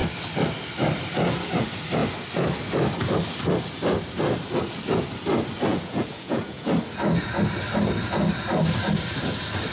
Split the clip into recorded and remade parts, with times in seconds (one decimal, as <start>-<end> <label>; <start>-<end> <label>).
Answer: 0.0-5.7 recorded; 5.7-6.7 remade; 6.7-9.7 recorded